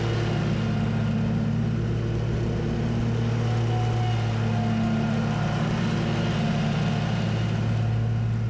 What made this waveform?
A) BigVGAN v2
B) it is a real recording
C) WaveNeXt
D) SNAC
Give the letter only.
B